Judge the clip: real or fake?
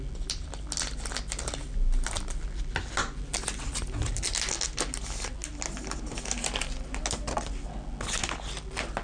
real